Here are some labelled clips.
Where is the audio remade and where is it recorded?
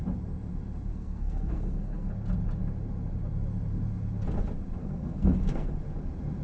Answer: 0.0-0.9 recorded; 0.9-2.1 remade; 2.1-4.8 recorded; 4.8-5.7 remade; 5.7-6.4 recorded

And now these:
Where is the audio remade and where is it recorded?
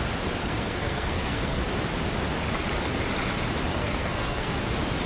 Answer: 0.0-0.4 recorded; 0.4-1.6 remade; 1.6-3.7 recorded; 3.7-4.6 remade; 4.6-5.1 recorded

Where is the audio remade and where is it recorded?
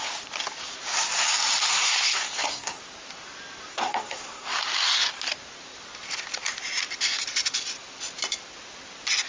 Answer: 0.0-1.7 recorded; 1.7-2.8 remade; 2.8-3.7 recorded; 3.7-4.6 remade; 4.6-9.3 recorded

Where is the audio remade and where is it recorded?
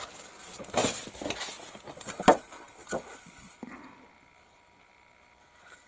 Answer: 0.0-5.9 recorded